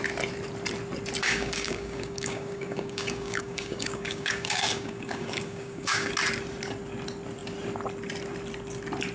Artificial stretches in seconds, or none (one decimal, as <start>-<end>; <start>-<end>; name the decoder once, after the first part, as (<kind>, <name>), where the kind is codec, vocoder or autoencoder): 1.2-6.1 (codec, DAC)